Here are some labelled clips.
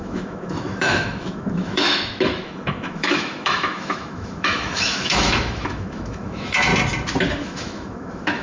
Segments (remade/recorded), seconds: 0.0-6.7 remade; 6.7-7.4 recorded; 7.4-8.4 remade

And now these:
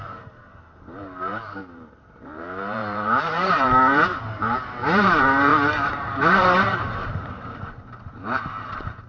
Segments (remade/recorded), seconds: 0.0-9.1 remade

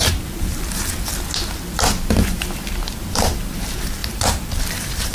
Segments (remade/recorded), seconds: 0.0-1.1 remade; 1.1-3.1 recorded; 3.1-5.1 remade

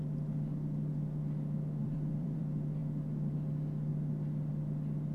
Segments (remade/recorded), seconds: 0.0-1.8 recorded; 1.8-2.4 remade; 2.4-5.1 recorded